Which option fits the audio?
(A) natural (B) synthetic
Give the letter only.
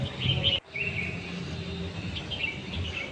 A